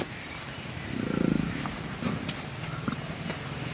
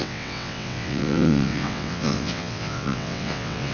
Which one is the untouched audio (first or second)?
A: first